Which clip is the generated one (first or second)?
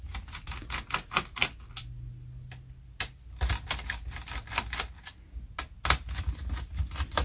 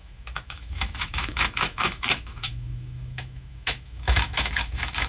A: second